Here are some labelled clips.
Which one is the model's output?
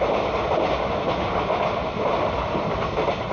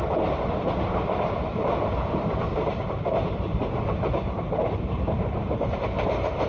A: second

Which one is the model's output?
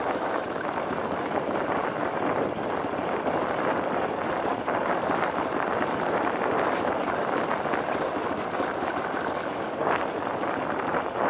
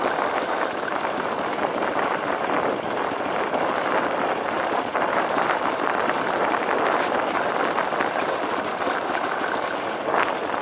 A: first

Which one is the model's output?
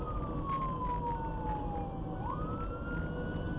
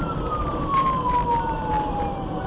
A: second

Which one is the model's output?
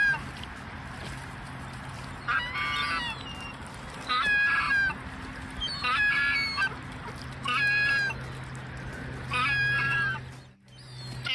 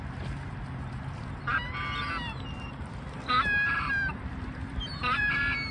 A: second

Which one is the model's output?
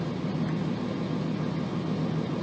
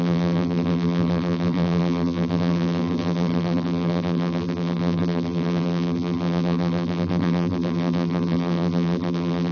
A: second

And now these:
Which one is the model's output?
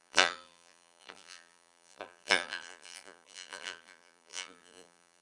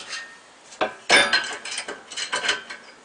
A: first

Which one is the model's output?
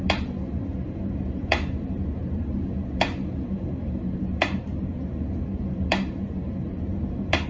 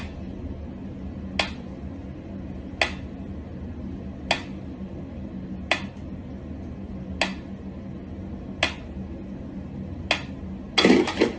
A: first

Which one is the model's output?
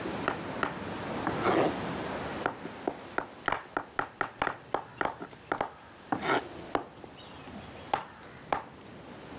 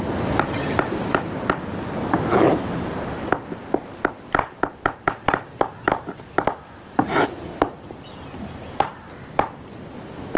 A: second